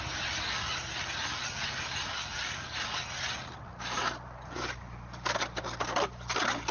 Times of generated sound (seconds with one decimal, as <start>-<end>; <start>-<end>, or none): 1.6-5.6